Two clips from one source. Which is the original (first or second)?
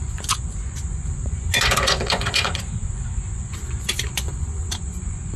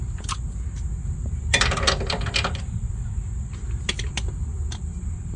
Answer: second